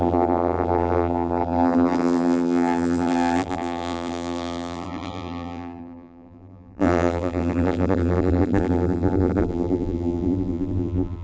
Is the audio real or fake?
fake